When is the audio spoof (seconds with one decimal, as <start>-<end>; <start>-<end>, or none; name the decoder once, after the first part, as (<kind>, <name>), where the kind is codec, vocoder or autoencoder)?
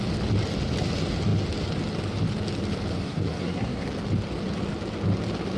2.9-3.9 (codec, SNAC)